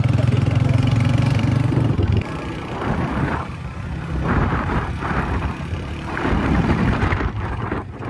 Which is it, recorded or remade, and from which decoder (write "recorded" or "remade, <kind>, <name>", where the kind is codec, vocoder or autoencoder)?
remade, vocoder, BigVGAN v2